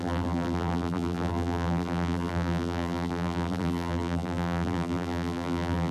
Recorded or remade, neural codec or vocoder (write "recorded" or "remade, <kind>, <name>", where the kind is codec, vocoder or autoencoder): remade, vocoder, BigVGAN v2